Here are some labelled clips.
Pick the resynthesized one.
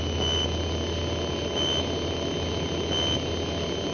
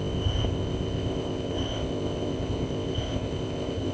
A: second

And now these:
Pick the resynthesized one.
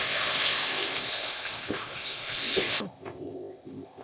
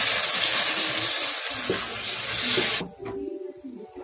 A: first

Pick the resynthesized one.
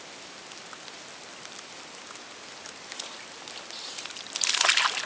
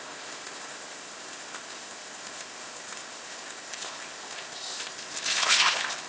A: second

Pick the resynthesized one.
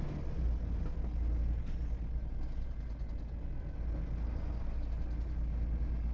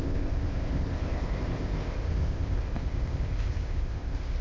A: second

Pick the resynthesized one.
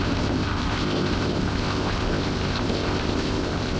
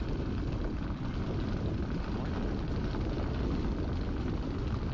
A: first